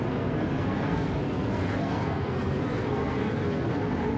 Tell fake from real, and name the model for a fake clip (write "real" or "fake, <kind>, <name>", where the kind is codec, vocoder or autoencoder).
fake, codec, SNAC